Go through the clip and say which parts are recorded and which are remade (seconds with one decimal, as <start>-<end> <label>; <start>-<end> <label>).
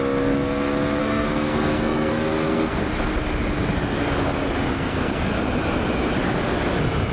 0.0-1.0 recorded; 1.0-2.8 remade; 2.8-4.7 recorded; 4.7-5.3 remade; 5.3-7.1 recorded